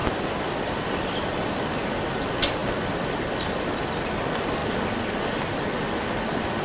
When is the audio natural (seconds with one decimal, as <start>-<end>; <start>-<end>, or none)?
1.8-6.6